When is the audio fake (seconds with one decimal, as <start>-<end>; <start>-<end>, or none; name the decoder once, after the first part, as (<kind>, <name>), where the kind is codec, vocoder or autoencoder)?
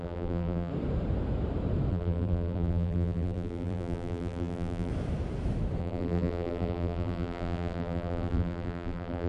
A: 0.0-0.7 (vocoder, BigVGAN v2); 1.9-4.9; 5.8-9.3